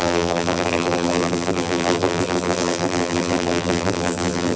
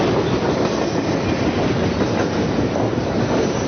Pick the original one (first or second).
second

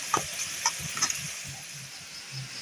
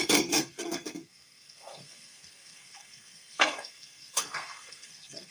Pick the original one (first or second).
first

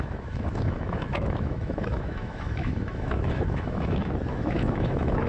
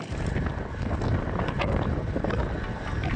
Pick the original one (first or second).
second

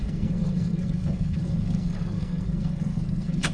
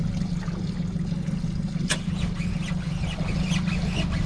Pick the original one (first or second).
second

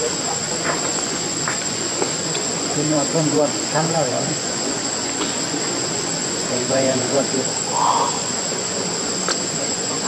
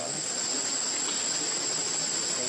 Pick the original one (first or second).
second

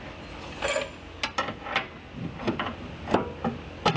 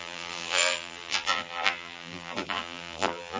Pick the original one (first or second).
first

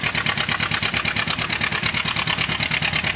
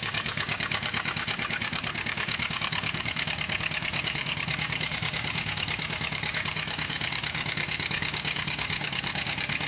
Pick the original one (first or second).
first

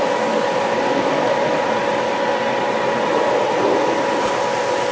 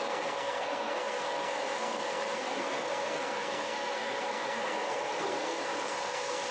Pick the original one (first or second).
first